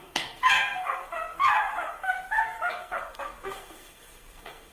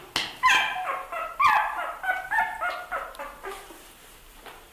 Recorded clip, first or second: second